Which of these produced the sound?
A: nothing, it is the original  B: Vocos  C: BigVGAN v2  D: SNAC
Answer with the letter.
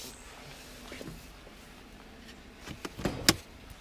A